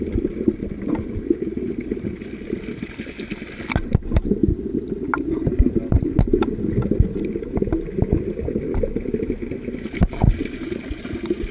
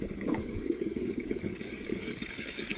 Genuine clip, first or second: first